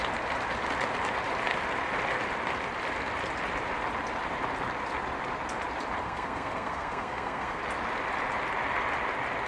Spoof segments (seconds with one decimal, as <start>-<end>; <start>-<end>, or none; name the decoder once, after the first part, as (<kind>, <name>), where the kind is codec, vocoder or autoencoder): 6.0-7.6 (codec, SNAC)